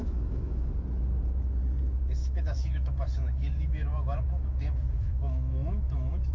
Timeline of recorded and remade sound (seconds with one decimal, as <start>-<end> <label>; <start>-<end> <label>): 0.0-0.7 remade; 0.7-2.2 recorded; 2.2-6.3 remade